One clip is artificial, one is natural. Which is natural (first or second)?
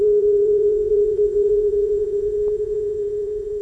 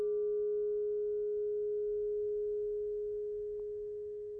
second